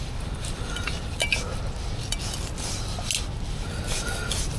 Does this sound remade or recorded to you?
recorded